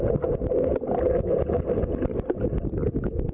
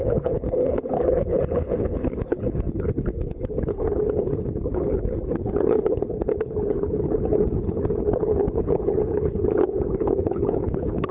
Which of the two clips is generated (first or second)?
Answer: second